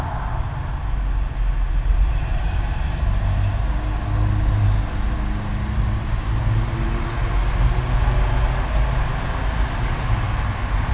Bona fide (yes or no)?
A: yes